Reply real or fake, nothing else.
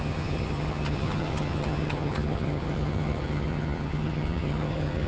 fake